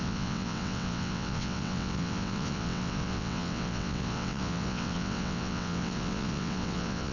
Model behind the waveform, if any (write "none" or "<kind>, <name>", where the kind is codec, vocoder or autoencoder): vocoder, WaveNeXt